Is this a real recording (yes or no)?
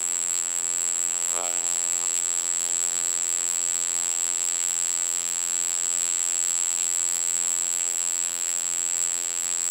no